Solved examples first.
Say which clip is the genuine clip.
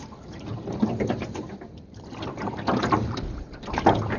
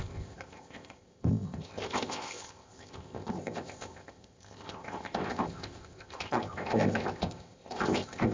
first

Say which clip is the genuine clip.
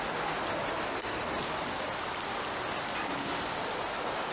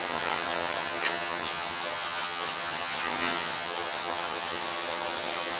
first